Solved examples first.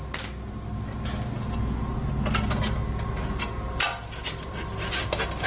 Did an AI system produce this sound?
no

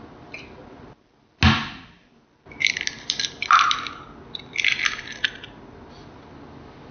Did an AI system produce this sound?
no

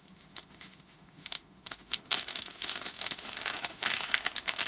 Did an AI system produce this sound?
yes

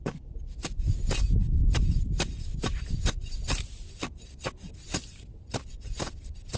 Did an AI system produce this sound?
no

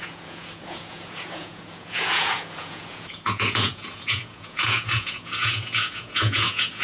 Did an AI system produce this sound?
yes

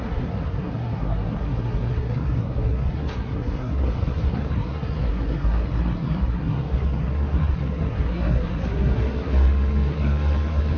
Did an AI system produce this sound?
yes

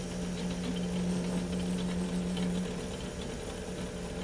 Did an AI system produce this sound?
no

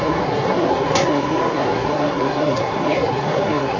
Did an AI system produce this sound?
yes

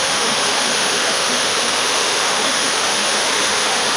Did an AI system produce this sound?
yes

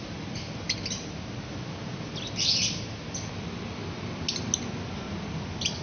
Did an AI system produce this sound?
no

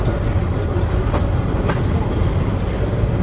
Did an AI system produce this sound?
no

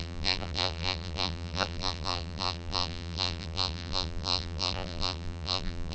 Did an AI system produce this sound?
yes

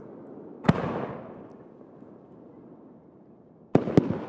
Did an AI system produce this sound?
no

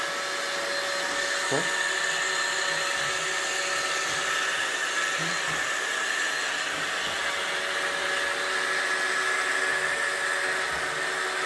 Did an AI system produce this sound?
no